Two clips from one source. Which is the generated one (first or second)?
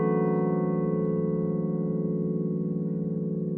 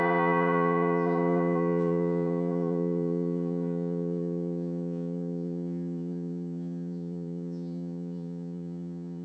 second